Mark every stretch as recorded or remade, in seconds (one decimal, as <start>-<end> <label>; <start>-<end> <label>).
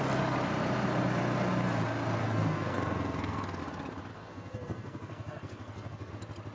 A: 0.0-2.2 recorded; 2.2-3.6 remade; 3.6-4.1 recorded; 4.1-6.1 remade; 6.1-6.5 recorded